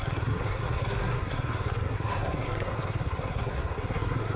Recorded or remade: remade